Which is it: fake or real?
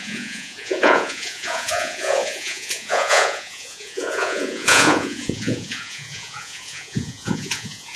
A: fake